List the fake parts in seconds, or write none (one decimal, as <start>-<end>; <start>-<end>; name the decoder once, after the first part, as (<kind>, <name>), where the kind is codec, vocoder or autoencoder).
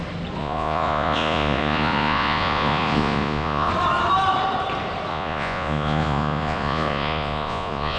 0.4-3.7 (vocoder, Vocos); 5.1-8.0